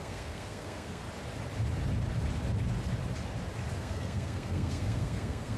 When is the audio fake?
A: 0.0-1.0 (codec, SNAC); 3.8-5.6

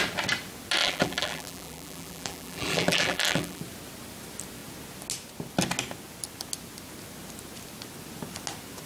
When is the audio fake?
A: 0.8-3.6 (vocoder, BigVGAN v2)

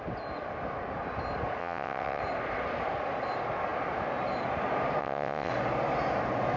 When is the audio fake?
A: 1.6-2.2 (vocoder, WaveNeXt); 5.0-5.5

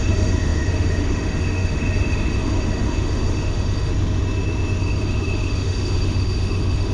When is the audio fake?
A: 0.0-3.9 (autoencoder, DAC-VAE); 4.8-6.9

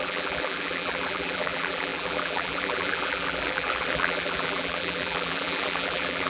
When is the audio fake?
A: 0.0-6.3 (vocoder, BigVGAN v2)

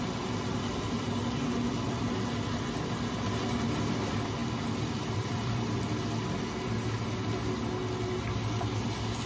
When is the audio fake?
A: 4.4-5.8 (vocoder, BigVGAN v2)

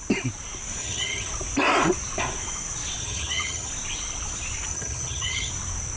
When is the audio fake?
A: 0.8-1.3 (vocoder, HiFi-GAN); 3.0-3.7; 4.7-5.5